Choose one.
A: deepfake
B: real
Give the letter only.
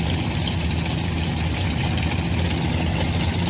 B